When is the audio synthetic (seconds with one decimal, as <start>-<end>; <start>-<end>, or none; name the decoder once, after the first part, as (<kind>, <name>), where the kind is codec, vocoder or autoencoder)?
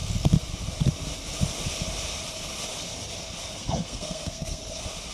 3.4-4.6 (codec, SNAC)